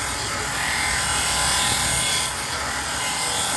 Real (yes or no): yes